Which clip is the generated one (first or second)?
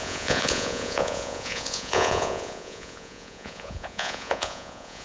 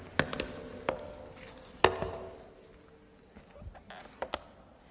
first